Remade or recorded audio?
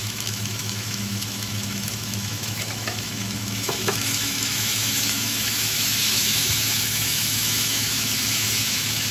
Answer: remade